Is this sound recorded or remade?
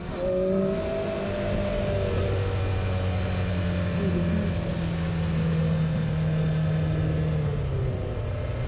recorded